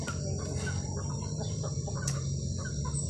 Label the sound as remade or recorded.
recorded